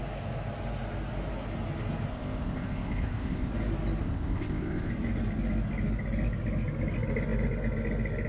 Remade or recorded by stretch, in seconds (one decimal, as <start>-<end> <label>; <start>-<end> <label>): 0.0-2.1 recorded; 2.1-3.5 remade; 3.5-4.0 recorded; 4.0-4.9 remade; 4.9-8.3 recorded